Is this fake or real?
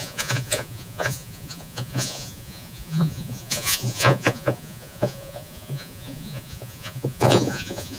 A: fake